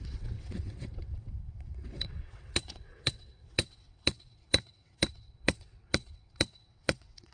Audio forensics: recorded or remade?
remade